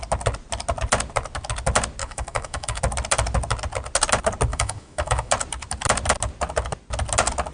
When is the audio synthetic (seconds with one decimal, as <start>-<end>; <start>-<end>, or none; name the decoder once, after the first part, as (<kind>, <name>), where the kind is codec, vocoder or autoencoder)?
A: 2.0-2.8 (autoencoder, DAC-VAE); 4.5-5.3